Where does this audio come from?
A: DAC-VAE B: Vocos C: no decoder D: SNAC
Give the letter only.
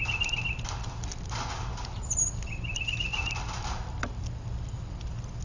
C